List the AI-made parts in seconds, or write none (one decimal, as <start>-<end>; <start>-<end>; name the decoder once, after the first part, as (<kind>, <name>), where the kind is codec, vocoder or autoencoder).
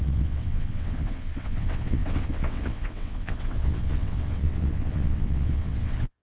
0.0-6.2 (vocoder, WaveNeXt)